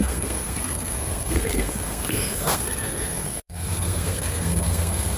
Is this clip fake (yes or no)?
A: yes